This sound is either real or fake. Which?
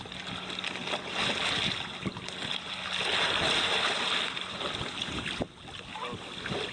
real